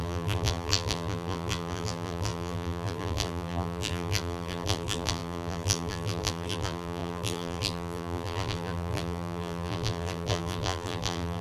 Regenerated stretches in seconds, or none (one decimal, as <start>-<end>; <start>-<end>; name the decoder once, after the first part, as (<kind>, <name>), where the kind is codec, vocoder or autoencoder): 0.0-11.4 (vocoder, BigVGAN v2)